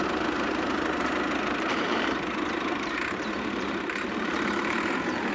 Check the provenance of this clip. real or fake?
fake